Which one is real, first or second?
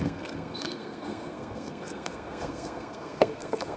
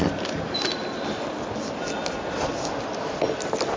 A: second